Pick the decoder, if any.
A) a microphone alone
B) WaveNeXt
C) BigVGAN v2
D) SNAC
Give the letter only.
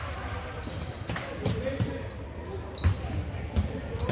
A